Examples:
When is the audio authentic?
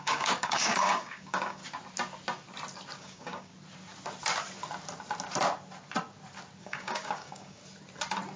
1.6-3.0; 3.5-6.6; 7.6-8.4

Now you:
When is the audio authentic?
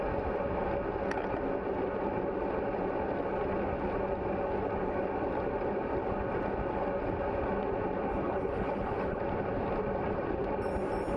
0.0-8.1; 9.2-11.2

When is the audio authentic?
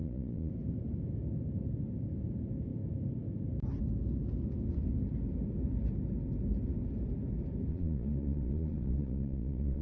0.5-7.7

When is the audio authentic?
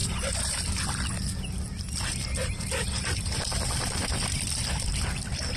0.6-2.4; 4.3-5.6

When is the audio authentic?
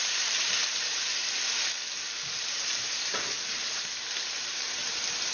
1.2-2.2; 4.8-5.3